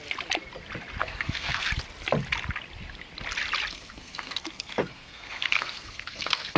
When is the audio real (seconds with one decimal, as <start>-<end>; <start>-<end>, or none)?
0.0-1.0; 1.7-3.7